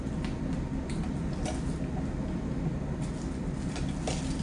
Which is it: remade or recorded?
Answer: recorded